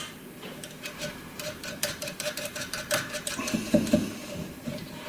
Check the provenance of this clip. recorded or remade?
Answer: remade